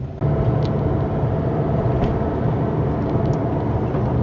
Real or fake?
real